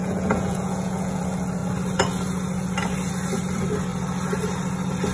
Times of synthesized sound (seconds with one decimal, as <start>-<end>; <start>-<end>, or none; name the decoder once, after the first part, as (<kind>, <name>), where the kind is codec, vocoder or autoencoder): 0.0-1.2 (vocoder, Vocos)